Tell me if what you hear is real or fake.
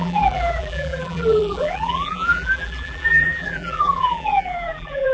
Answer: fake